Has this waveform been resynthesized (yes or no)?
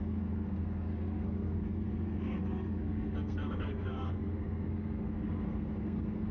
yes